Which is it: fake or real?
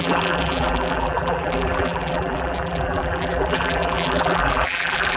fake